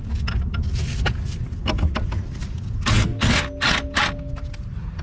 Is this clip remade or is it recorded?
recorded